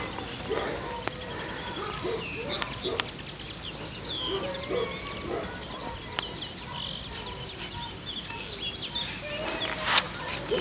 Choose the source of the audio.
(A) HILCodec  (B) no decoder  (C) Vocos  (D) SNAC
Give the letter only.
B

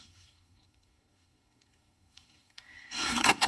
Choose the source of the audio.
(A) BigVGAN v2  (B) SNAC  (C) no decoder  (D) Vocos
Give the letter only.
B